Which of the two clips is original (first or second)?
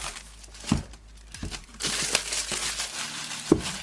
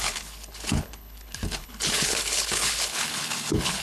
first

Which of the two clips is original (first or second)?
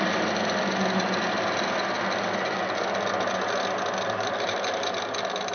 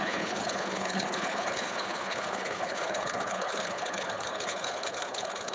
first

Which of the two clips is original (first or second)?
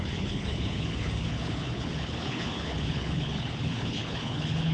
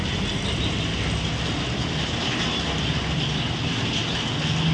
second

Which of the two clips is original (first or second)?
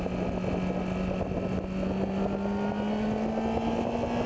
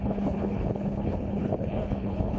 first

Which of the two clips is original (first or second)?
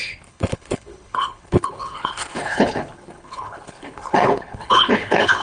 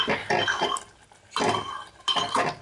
second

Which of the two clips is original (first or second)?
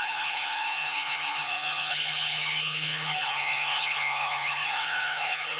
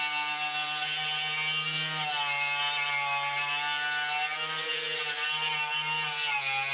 second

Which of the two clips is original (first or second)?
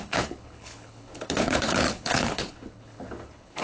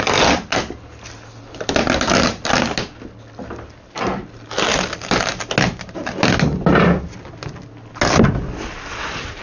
second